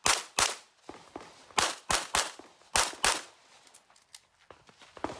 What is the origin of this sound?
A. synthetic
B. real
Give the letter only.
B